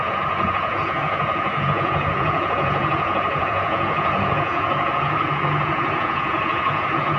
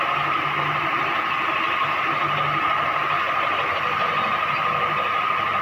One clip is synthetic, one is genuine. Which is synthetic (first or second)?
first